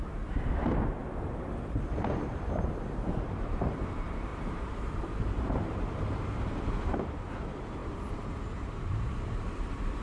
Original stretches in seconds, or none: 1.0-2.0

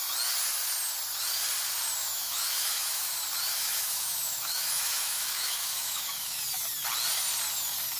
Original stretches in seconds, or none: 0.0-2.0; 3.1-3.5; 6.4-8.0